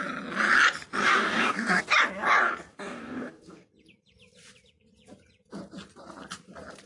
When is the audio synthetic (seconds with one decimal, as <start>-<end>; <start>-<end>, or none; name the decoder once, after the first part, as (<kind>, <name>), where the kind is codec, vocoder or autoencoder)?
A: 1.0-1.8 (codec, DAC); 2.7-3.7